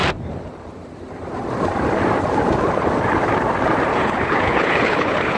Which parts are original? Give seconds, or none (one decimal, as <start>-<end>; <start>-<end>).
0.0-3.9